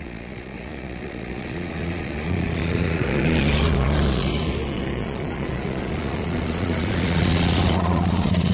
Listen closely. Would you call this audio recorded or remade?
remade